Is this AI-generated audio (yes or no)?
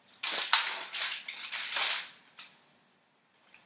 no